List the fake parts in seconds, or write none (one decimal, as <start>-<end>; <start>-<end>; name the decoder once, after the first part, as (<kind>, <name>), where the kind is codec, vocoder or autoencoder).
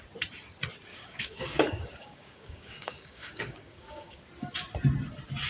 0.9-4.2 (codec, DAC)